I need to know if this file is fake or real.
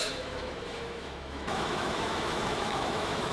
fake